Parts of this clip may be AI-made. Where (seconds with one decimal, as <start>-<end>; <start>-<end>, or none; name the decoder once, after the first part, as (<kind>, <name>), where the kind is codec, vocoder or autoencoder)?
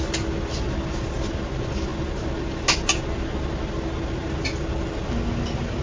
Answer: none